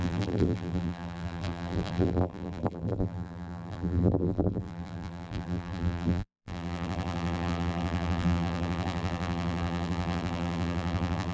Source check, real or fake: fake